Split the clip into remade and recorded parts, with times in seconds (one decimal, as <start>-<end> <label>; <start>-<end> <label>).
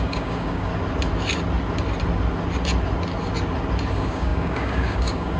0.0-0.7 remade; 0.7-3.9 recorded; 3.9-5.4 remade